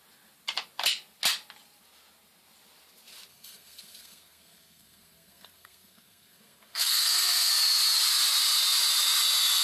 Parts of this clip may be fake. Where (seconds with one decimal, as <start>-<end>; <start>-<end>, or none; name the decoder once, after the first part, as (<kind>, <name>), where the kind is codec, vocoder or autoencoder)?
3.3-7.5 (codec, SNAC)